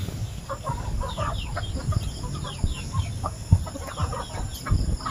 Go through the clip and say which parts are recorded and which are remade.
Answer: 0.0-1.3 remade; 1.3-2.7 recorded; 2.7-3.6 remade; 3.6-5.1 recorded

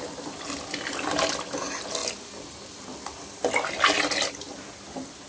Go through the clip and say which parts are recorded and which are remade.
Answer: 0.0-5.3 recorded

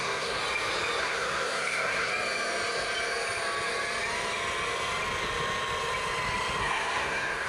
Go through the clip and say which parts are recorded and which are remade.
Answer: 0.0-0.4 remade; 0.4-1.0 recorded; 1.0-2.1 remade; 2.1-6.6 recorded; 6.6-7.5 remade

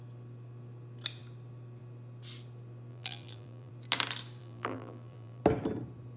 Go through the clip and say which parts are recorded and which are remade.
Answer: 0.0-2.9 recorded; 2.9-3.7 remade; 3.7-4.4 recorded; 4.4-5.4 remade; 5.4-6.2 recorded